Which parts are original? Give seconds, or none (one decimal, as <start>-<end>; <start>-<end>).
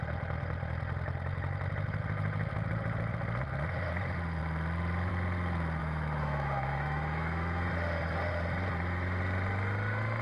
0.0-5.8; 7.7-10.2